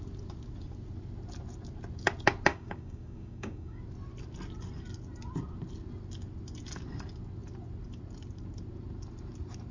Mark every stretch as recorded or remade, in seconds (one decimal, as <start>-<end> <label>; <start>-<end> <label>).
0.0-2.5 recorded; 2.5-3.8 remade; 3.8-9.7 recorded